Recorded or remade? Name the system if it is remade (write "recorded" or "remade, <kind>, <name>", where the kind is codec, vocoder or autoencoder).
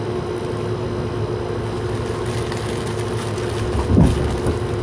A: recorded